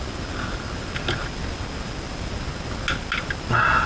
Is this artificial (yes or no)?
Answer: no